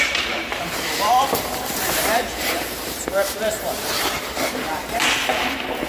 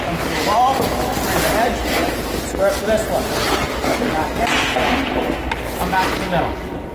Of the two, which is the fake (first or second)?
first